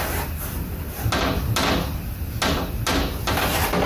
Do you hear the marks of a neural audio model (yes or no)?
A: no